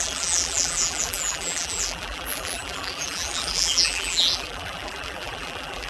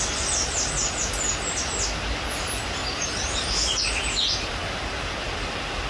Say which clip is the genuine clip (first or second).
second